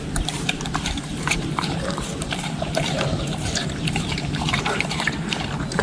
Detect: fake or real fake